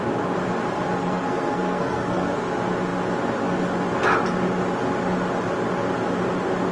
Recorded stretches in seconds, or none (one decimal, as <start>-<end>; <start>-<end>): 0.0-1.0; 2.5-6.7